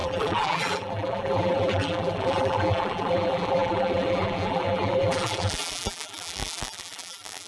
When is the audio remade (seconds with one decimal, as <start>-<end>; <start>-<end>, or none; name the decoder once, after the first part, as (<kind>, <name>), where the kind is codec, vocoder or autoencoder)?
0.0-7.5 (vocoder, BigVGAN v2)